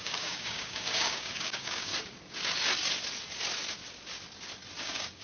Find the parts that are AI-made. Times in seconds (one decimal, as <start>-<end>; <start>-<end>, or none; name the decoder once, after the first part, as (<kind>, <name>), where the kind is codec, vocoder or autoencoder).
0.0-1.9 (codec, DAC); 4.8-5.2